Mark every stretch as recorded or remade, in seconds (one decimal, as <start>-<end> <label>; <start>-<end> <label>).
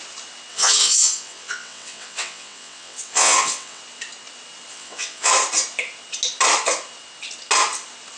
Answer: 0.0-0.5 recorded; 0.5-3.8 remade; 3.8-4.7 recorded; 4.7-5.3 remade; 5.3-8.2 recorded